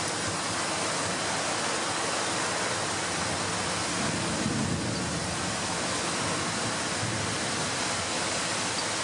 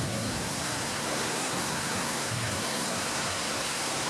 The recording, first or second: first